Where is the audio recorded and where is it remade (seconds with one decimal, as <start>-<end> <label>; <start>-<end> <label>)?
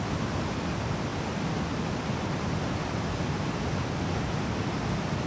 0.0-5.3 recorded